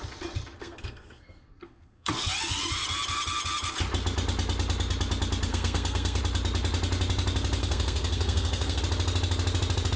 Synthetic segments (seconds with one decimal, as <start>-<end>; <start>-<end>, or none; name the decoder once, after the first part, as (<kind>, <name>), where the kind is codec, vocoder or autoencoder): 0.6-2.3 (codec, SNAC); 5.5-6.2; 7.6-8.8